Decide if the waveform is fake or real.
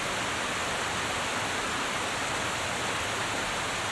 real